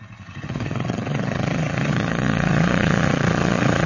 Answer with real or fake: fake